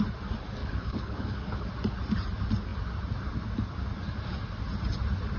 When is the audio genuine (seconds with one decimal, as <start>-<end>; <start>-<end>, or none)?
0.0-0.6; 1.7-5.4